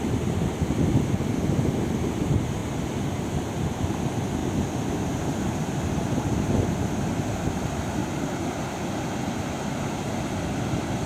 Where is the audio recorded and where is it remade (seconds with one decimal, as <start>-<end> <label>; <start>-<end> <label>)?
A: 0.0-11.1 recorded